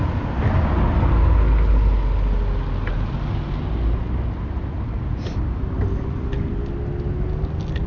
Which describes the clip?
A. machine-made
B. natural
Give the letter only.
B